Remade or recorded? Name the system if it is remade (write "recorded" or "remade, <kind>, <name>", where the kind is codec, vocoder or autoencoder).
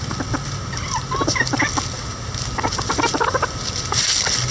recorded